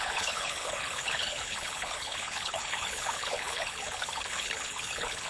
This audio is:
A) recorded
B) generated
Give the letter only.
B